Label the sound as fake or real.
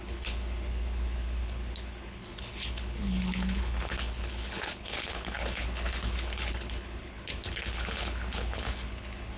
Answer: fake